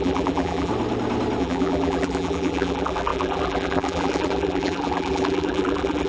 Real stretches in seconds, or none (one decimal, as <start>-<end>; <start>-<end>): 0.7-1.4